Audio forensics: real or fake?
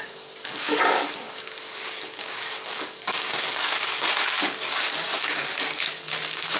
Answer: fake